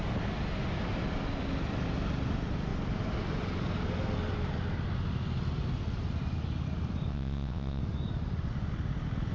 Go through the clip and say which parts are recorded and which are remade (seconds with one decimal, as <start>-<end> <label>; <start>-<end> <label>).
0.0-7.1 recorded; 7.1-7.8 remade; 7.8-9.3 recorded